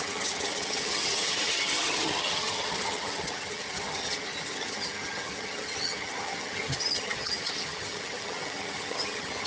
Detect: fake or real fake